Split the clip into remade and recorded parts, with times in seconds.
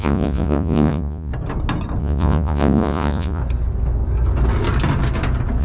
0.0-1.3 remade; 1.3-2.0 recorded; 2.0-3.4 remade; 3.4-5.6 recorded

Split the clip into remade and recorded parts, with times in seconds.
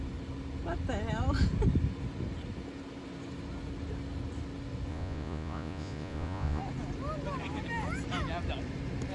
0.0-4.9 recorded; 4.9-6.6 remade; 6.6-9.1 recorded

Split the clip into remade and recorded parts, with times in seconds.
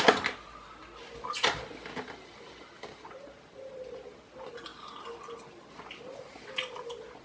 0.0-7.2 recorded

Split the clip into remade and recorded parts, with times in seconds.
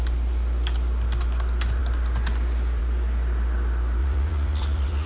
0.0-4.0 recorded; 4.0-5.1 remade